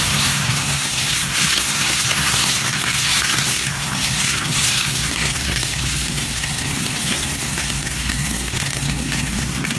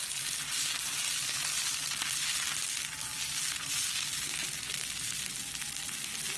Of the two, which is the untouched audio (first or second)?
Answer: second